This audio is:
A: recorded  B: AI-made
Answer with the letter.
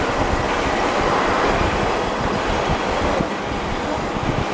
B